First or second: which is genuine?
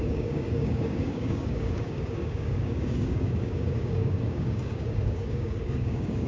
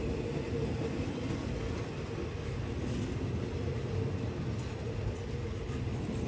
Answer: second